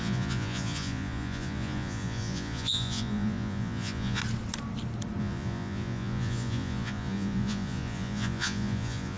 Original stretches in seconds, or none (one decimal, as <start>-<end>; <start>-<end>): 4.2-5.2